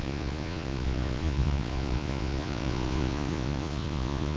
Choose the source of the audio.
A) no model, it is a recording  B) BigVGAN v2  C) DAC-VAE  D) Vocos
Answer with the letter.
D